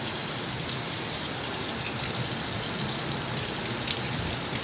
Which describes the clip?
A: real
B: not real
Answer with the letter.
A